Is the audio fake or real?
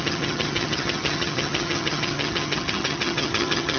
fake